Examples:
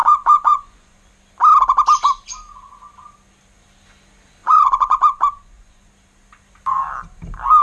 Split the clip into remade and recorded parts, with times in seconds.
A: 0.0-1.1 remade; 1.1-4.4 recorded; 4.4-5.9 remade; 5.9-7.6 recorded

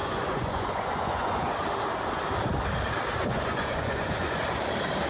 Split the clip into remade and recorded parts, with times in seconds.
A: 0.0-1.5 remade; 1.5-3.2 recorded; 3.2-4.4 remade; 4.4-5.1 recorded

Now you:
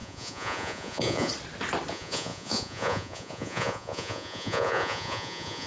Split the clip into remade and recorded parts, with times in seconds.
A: 0.0-1.3 remade; 1.3-1.9 recorded; 1.9-5.7 remade

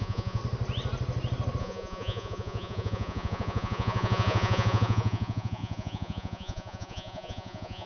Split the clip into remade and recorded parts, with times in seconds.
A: 0.0-0.4 remade; 0.4-1.6 recorded; 1.6-7.9 remade

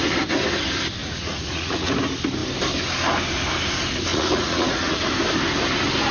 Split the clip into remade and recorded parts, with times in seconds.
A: 0.0-1.0 recorded; 1.0-1.9 remade; 1.9-4.1 recorded; 4.1-5.0 remade; 5.0-6.1 recorded

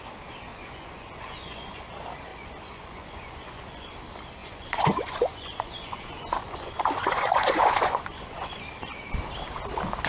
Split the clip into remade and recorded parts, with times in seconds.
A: 0.0-0.5 recorded; 0.5-1.8 remade; 1.8-2.3 recorded; 2.3-3.9 remade; 3.9-4.4 recorded; 4.4-8.6 remade; 8.6-10.1 recorded